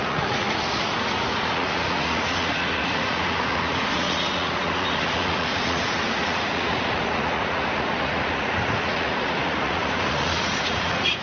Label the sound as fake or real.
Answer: fake